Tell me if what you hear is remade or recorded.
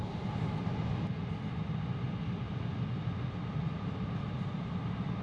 recorded